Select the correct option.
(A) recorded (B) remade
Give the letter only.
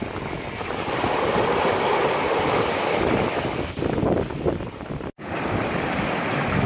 A